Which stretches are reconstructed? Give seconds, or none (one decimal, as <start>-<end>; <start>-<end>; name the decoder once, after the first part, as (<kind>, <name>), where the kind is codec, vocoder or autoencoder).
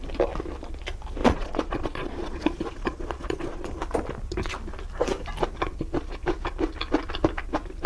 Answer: 1.2-3.7 (vocoder, Vocos)